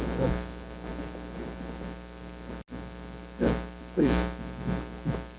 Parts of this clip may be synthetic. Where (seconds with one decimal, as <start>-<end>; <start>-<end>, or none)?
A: none